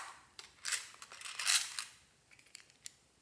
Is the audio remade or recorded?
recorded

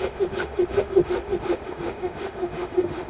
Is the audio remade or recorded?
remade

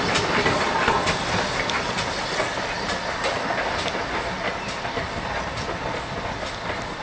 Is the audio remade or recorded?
recorded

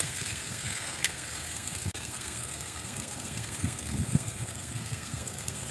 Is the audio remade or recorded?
remade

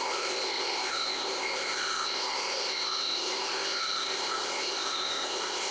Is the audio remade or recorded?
remade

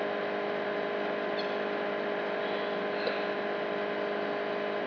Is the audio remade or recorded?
recorded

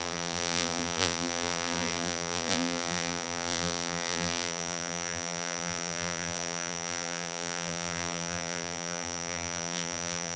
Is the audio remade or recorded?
remade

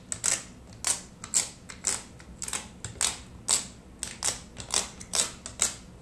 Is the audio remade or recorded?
recorded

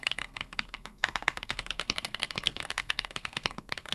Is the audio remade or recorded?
remade